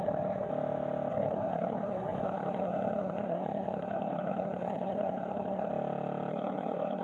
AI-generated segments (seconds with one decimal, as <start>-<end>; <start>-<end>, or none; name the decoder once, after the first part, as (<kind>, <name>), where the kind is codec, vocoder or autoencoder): 0.0-0.5 (codec, SNAC); 1.1-5.7; 6.3-7.0